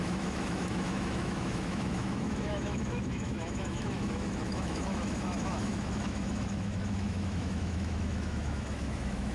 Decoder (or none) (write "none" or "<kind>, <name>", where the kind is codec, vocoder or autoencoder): autoencoder, DAC-VAE